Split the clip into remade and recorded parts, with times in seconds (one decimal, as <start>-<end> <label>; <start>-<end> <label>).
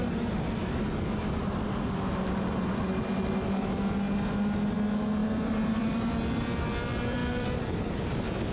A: 0.0-5.2 recorded; 5.2-6.1 remade; 6.1-7.2 recorded; 7.2-8.1 remade; 8.1-8.5 recorded